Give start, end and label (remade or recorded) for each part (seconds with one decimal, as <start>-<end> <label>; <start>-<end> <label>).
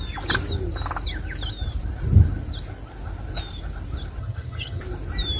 0.0-4.2 recorded; 4.2-4.8 remade; 4.8-5.4 recorded